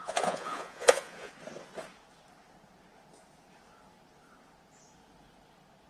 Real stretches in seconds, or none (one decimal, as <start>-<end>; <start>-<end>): 1.3-5.9